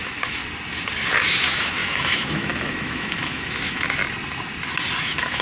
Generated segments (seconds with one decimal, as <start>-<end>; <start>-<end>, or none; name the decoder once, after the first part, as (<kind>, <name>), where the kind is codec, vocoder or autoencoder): 0.0-0.4 (autoencoder, DAC-VAE); 1.3-4.0; 5.0-5.4